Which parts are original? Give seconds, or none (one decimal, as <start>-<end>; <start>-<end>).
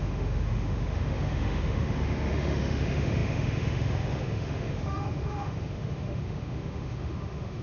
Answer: none